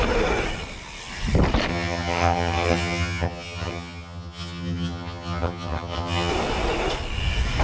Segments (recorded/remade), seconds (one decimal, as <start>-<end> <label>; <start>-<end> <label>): 0.0-1.7 recorded; 1.7-6.3 remade; 6.3-7.6 recorded